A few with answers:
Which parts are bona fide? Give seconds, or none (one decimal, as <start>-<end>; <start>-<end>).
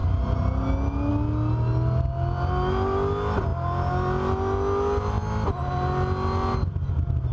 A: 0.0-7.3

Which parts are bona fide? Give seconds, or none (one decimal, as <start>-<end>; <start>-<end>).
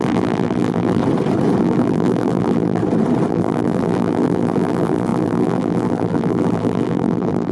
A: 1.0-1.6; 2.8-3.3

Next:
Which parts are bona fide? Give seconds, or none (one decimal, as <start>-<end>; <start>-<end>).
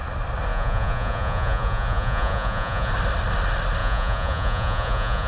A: 0.0-0.5; 2.9-3.8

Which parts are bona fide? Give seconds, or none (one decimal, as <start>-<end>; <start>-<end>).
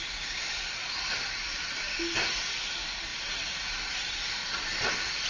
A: 0.0-5.3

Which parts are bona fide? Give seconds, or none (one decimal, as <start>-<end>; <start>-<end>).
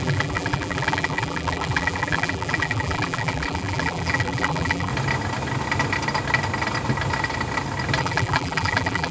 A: 4.9-8.0